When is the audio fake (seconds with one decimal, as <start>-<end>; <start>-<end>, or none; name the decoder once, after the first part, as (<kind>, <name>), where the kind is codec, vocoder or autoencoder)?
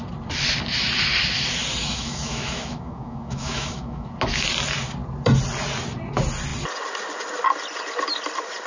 1.8-4.1 (autoencoder, DAC-VAE)